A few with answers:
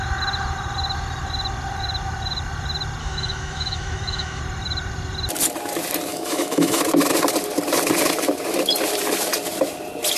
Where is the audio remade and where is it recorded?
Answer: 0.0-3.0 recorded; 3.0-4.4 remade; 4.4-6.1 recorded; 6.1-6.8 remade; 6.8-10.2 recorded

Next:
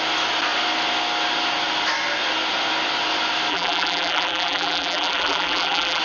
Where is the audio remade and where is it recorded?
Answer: 0.0-3.5 recorded; 3.5-6.0 remade

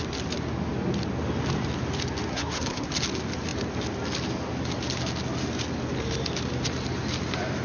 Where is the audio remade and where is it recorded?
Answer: 0.0-2.3 recorded; 2.3-2.9 remade; 2.9-7.6 recorded